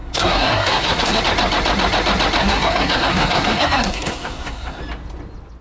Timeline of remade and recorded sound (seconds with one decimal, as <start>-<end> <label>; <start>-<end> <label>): 0.0-1.2 remade; 1.2-2.4 recorded; 2.4-4.8 remade; 4.8-5.6 recorded

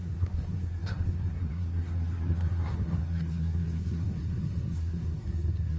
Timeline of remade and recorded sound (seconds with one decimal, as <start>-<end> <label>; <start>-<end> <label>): 0.0-5.8 remade

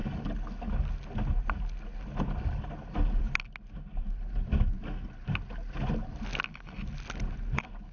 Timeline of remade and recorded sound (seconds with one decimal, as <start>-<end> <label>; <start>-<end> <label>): 0.0-7.9 recorded